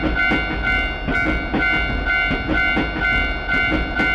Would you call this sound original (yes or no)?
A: yes